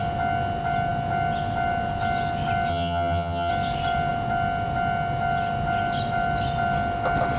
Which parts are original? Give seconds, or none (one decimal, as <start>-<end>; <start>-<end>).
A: 0.0-2.7; 3.5-7.4